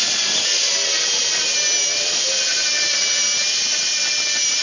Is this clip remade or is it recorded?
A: recorded